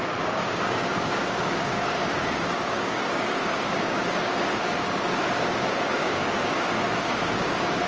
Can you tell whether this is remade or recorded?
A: remade